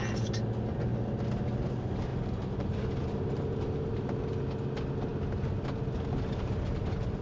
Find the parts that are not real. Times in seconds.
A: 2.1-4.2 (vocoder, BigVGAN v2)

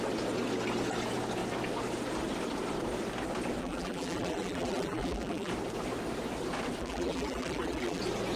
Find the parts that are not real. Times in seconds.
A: 3.6-5.5 (vocoder, BigVGAN v2); 6.8-8.0

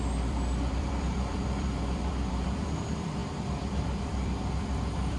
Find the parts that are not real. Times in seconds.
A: 0.0-5.2 (vocoder, BigVGAN v2)

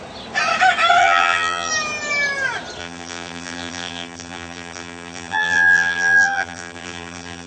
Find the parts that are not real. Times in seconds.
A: 1.0-1.7 (vocoder, BigVGAN v2); 2.8-7.5

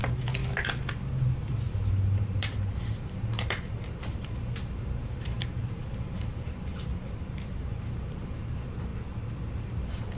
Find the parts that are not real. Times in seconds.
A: 0.0-0.4 (vocoder, BigVGAN v2); 1.9-8.9; 9.5-10.2